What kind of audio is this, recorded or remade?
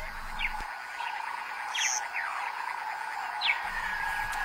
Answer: recorded